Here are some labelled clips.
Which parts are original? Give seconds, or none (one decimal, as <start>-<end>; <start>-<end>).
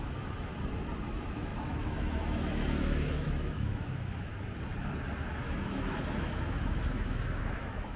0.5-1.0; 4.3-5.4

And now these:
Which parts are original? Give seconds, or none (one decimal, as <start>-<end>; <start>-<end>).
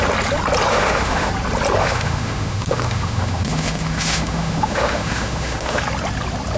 0.0-0.7; 1.3-1.8; 5.8-6.6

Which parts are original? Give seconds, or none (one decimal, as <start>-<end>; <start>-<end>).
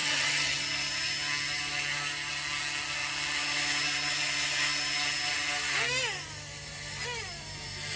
0.6-8.0